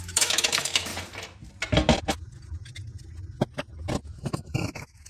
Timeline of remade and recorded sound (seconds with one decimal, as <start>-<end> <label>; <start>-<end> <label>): 0.0-0.9 remade; 0.9-4.0 recorded; 4.0-5.1 remade